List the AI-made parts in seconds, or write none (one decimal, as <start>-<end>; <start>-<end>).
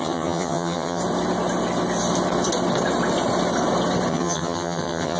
0.0-1.0; 4.1-5.2